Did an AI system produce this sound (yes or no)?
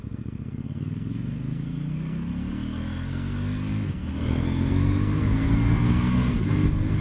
yes